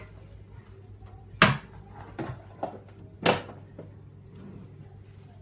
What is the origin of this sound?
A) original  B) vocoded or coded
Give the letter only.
A